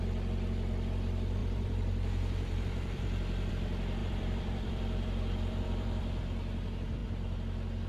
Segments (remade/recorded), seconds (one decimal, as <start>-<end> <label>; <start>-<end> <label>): 0.0-1.4 recorded; 1.4-3.5 remade; 3.5-4.0 recorded; 4.0-6.2 remade; 6.2-7.9 recorded